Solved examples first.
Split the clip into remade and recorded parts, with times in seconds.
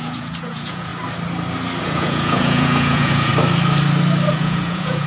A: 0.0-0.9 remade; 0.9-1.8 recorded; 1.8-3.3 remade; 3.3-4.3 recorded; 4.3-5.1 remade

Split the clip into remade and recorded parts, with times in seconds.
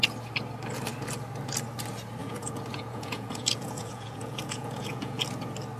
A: 0.0-2.2 recorded; 2.2-5.2 remade; 5.2-5.8 recorded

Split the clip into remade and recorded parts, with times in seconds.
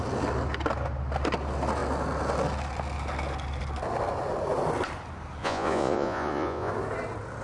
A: 0.0-5.4 recorded; 5.4-6.7 remade; 6.7-7.4 recorded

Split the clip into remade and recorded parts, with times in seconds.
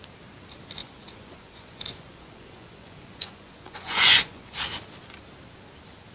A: 0.0-0.8 recorded; 0.8-4.5 remade; 4.5-6.1 recorded